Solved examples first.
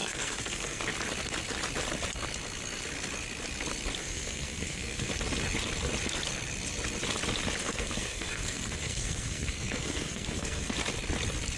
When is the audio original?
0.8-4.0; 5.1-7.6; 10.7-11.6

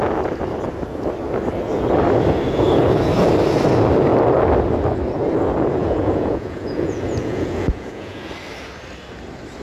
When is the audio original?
0.0-5.8; 8.3-9.6

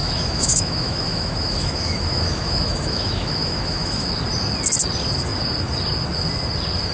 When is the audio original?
4.1-6.9

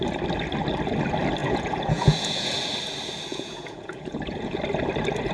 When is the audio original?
0.0-1.4; 2.6-3.3; 4.6-5.3

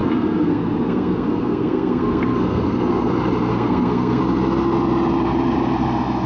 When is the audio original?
3.1-3.5; 4.2-6.3

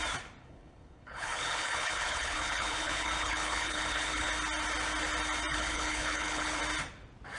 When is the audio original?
0.0-0.4; 4.3-5.5; 6.6-7.4